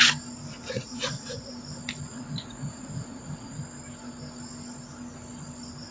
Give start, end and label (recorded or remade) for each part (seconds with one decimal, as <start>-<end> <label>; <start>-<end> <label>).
0.0-0.5 recorded; 0.5-1.5 remade; 1.5-2.1 recorded; 2.1-3.6 remade; 3.6-5.9 recorded